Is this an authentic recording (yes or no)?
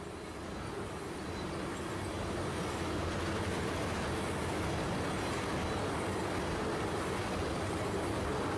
yes